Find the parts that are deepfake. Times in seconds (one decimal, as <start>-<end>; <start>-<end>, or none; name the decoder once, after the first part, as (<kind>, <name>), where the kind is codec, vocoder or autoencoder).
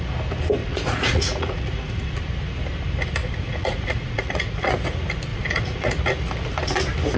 0.6-2.1 (vocoder, Vocos); 3.2-4.7; 5.3-6.0